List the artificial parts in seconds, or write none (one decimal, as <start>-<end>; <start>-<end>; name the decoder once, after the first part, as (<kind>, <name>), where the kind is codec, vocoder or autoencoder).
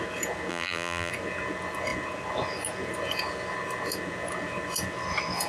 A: 0.5-1.1 (vocoder, BigVGAN v2)